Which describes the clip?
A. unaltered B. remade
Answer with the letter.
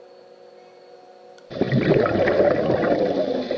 A